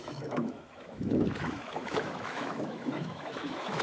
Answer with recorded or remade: remade